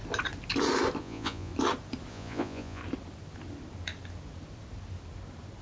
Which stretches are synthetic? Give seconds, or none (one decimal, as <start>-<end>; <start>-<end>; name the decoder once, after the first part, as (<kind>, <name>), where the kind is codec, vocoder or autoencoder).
1.0-1.5 (vocoder, Vocos); 2.1-2.8